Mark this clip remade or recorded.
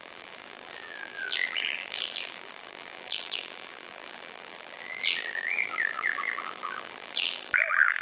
remade